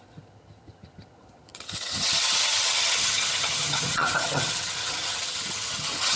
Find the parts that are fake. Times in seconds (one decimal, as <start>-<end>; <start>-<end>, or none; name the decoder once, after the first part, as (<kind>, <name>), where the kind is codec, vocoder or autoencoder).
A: 0.0-6.2 (vocoder, HiFi-GAN)